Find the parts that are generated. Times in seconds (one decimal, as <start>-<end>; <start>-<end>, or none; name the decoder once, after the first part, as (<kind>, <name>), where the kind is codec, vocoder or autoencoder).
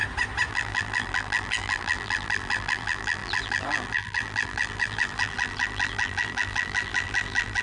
0.5-7.6 (vocoder, BigVGAN v2)